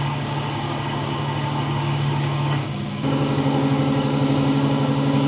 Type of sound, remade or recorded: remade